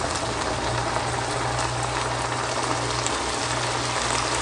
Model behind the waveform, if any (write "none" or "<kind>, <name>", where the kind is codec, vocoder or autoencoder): none